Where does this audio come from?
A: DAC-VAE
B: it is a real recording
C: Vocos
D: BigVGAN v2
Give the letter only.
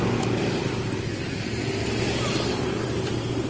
B